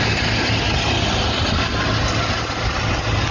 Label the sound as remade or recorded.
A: recorded